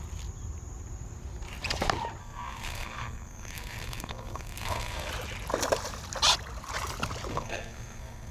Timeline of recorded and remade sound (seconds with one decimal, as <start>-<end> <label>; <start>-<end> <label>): 0.0-2.2 recorded; 2.2-5.1 remade; 5.1-7.3 recorded; 7.3-8.3 remade